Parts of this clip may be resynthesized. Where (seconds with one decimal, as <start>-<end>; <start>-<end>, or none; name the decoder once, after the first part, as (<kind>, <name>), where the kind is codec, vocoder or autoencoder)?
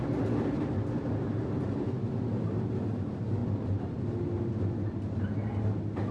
none